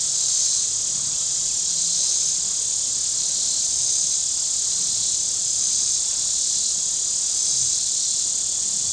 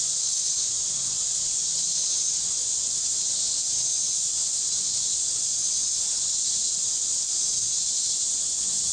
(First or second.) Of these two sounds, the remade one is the second